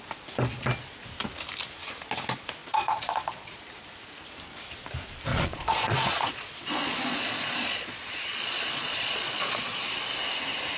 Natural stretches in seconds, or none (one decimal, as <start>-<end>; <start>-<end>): 0.0-2.6; 3.6-5.3; 9.8-10.8